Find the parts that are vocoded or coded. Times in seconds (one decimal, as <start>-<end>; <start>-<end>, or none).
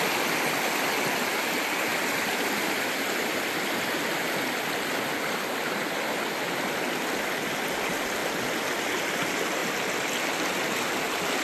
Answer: 1.9-3.7; 8.2-8.9